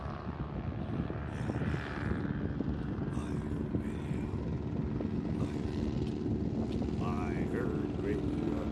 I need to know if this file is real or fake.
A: real